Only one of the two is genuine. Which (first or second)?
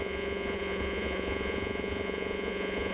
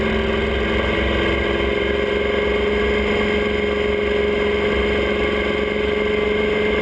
second